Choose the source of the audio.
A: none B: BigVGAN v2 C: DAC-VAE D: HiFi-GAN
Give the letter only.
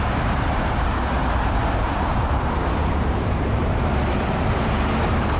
B